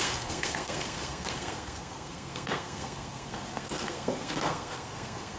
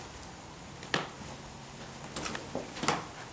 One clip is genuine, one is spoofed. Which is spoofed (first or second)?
first